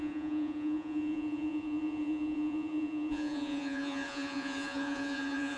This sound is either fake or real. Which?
fake